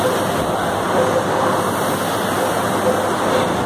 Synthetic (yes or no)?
no